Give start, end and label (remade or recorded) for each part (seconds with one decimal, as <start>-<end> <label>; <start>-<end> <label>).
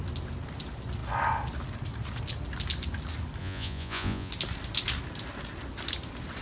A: 0.0-3.4 recorded; 3.4-4.3 remade; 4.3-6.4 recorded